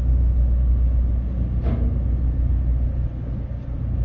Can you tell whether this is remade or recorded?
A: recorded